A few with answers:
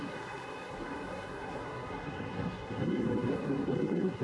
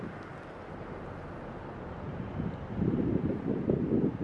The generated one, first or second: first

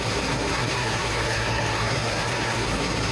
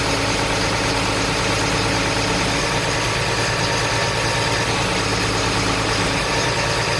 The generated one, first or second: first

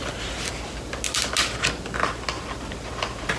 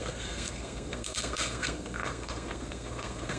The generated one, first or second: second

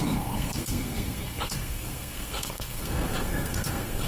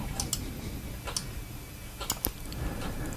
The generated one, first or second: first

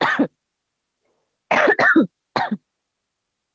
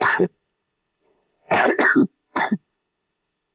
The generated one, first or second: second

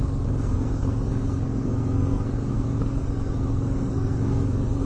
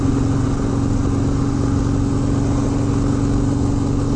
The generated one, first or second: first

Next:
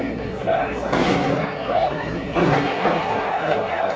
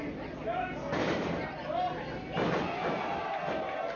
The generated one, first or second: first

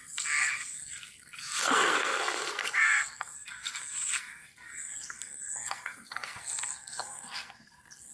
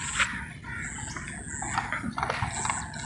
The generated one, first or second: first